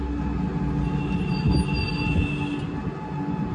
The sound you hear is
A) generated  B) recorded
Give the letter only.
B